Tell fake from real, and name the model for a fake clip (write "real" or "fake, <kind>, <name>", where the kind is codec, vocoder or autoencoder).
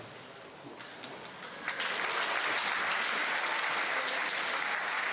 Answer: real